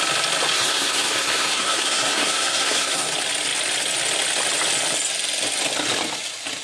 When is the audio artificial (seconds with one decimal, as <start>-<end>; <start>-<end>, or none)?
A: 0.5-3.1